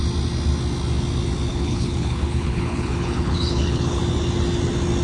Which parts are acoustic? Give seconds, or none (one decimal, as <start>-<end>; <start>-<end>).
0.0-1.5; 4.0-5.0